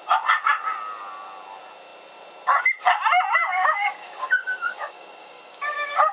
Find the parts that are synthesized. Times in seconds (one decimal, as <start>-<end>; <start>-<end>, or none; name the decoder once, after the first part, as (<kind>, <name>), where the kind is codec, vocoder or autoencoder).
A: 3.4-6.1 (codec, DAC)